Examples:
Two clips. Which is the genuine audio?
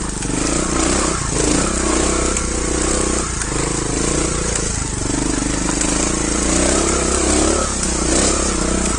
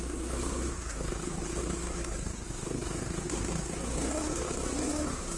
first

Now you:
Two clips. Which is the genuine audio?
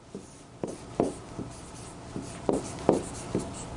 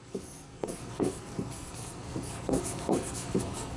first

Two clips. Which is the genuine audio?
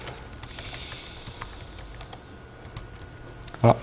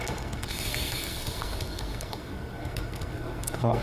first